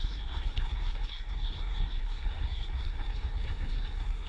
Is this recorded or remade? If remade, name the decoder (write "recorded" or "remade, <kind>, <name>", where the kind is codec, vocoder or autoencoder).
remade, codec, SNAC